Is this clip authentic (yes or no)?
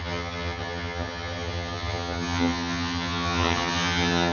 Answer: no